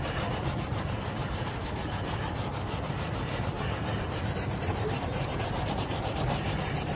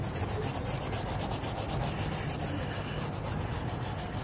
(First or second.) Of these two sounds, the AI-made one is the first